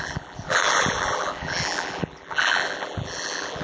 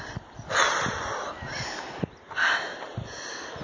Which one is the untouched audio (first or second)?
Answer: second